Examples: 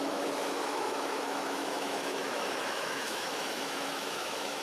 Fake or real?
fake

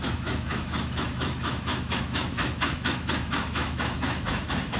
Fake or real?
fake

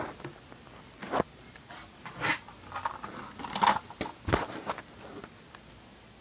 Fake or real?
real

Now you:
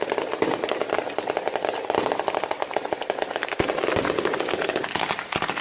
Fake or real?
real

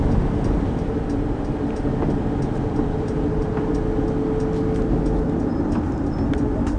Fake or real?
real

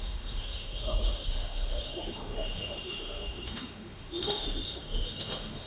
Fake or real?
fake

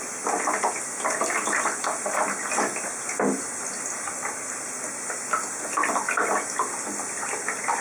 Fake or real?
real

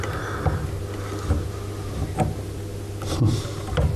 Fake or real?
real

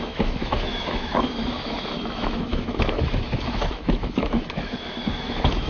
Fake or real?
fake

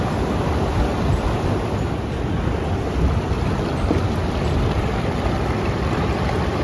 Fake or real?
real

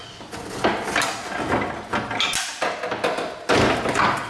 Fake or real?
real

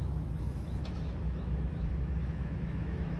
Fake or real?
fake